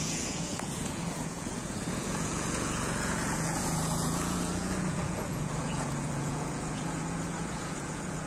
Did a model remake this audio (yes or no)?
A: yes